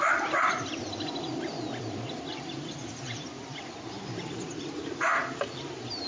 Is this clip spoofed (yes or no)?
yes